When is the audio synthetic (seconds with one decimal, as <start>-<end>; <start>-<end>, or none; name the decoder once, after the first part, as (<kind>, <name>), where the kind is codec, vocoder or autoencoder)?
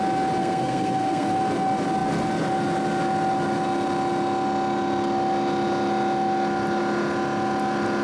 0.4-1.3 (codec, SNAC)